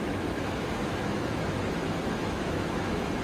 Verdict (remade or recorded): remade